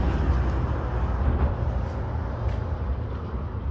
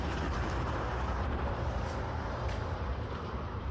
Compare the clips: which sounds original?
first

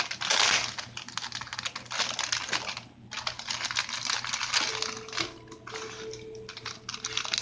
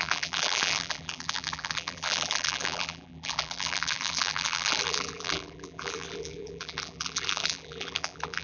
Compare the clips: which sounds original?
first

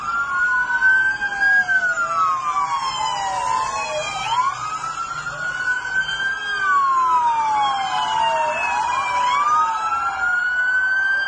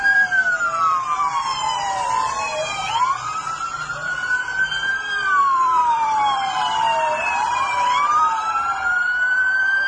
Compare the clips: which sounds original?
first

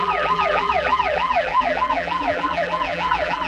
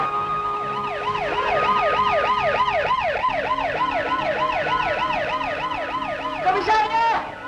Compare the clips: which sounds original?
second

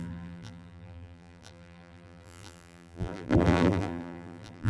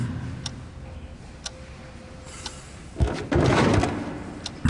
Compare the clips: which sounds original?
second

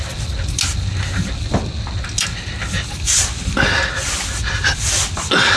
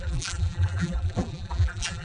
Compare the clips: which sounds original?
first